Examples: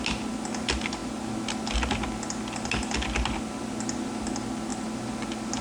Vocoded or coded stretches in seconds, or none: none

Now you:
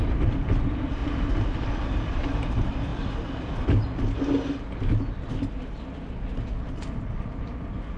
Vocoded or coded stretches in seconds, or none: 0.0-1.0; 2.1-2.9

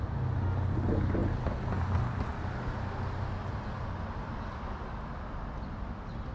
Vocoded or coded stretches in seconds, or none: none

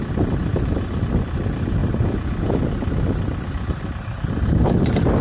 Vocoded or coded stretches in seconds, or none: 0.5-1.2

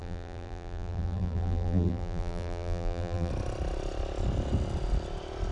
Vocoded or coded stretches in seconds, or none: 0.0-3.3

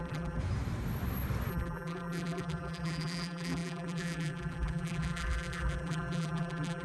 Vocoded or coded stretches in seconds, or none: 0.0-0.4; 1.5-6.8

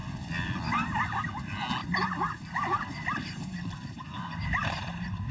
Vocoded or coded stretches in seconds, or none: 1.8-5.3